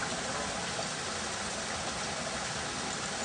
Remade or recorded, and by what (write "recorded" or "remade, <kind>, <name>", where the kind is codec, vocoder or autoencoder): recorded